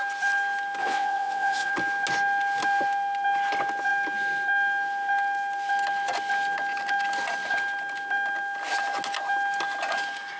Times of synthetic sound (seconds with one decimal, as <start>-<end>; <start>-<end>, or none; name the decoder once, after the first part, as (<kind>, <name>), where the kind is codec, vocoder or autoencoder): 0.8-1.7 (vocoder, WaveNeXt)